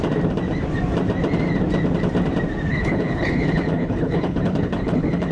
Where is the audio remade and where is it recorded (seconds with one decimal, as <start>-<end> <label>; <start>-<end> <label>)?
0.0-2.7 recorded; 2.7-5.3 remade